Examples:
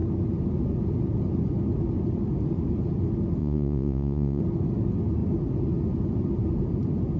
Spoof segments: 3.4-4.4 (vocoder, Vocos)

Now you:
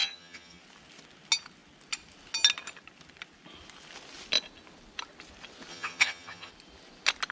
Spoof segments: 0.0-0.6 (vocoder, HiFi-GAN); 5.7-6.5

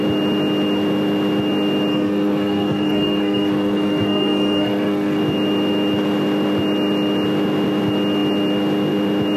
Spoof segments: 1.9-5.2 (codec, SNAC)

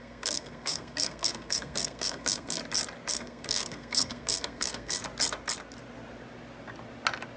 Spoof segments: 0.0-2.6 (codec, SNAC); 3.1-5.0

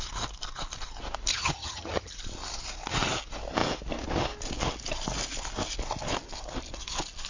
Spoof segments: 1.3-2.1 (vocoder, HiFi-GAN)